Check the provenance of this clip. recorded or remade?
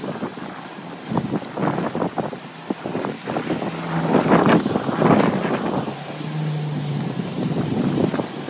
recorded